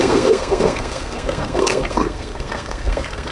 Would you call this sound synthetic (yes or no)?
yes